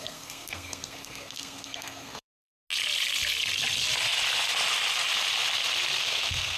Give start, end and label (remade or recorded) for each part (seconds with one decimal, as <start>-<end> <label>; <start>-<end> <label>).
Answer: 0.0-2.5 remade; 2.5-6.0 recorded; 6.0-6.6 remade